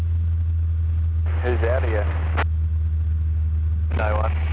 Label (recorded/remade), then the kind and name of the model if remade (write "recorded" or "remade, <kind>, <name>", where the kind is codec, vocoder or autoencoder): recorded